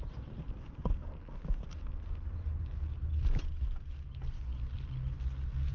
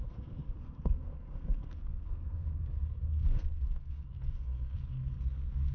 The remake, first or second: second